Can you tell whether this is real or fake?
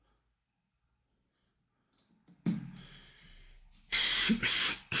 real